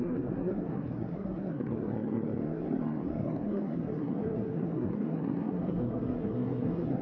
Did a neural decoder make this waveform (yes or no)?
yes